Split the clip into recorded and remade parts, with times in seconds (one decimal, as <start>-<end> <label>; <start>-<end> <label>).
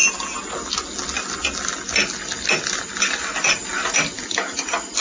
0.0-5.0 recorded